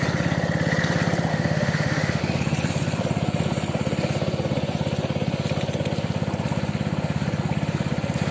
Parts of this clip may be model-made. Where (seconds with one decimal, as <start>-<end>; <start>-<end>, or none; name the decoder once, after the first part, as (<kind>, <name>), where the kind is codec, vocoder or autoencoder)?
1.3-2.2 (autoencoder, DAC-VAE)